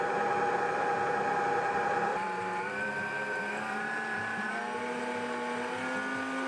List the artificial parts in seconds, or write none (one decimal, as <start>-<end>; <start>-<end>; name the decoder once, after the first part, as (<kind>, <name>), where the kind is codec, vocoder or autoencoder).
2.1-4.5 (vocoder, BigVGAN v2)